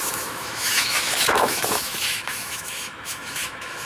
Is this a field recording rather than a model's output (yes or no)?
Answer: no